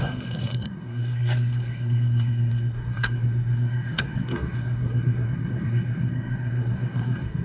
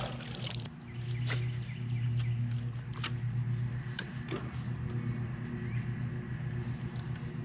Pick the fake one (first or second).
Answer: first